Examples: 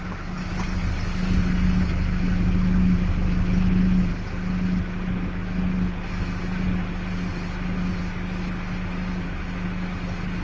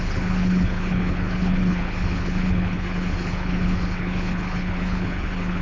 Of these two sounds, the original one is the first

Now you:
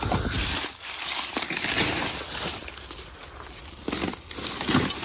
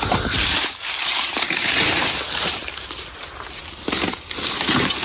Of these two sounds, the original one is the first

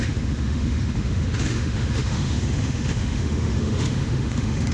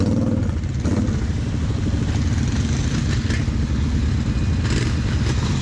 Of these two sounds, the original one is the second